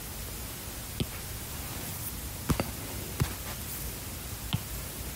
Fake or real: real